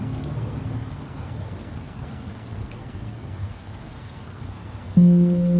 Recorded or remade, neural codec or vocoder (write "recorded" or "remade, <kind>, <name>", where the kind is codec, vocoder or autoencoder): remade, codec, SNAC